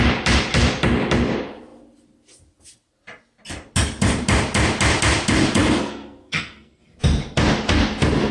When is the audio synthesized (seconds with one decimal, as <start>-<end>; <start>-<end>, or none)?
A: 5.6-6.8